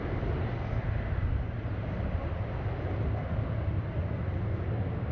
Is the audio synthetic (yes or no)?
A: no